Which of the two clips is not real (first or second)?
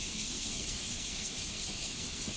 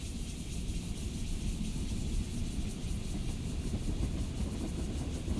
first